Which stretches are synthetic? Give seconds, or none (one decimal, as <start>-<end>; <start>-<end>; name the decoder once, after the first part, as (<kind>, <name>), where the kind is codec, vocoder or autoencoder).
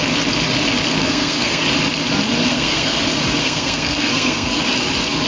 1.0-1.6 (codec, SNAC); 2.5-3.0; 3.4-4.6